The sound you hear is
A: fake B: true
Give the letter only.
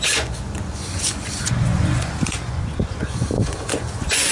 A